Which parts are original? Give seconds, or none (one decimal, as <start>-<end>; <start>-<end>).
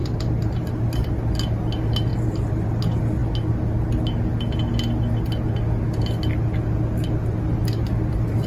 1.1-2.1; 2.8-8.5